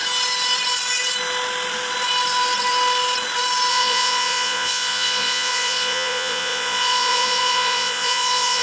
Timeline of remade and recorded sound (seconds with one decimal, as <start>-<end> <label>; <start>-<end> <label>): 0.0-3.7 recorded; 3.7-8.6 remade